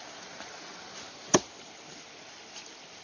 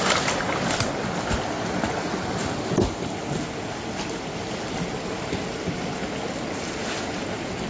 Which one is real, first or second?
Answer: second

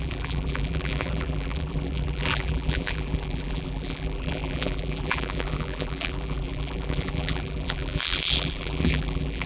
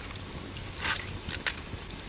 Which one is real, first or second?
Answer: second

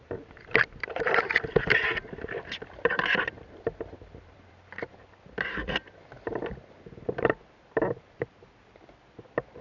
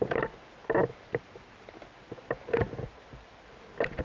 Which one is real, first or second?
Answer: second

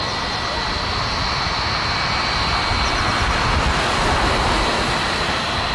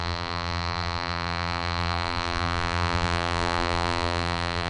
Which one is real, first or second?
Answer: first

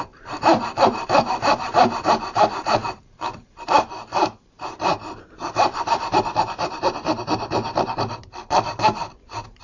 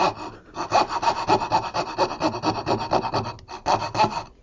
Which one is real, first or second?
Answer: second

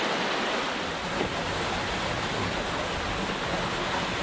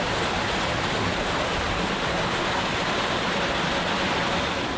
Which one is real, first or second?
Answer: first